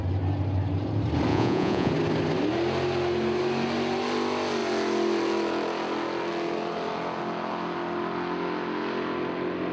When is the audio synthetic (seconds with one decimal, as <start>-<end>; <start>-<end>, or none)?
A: 1.3-1.9